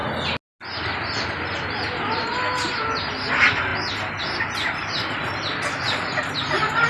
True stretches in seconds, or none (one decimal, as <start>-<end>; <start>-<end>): 0.0-6.9